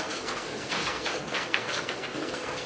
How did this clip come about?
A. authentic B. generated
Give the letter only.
B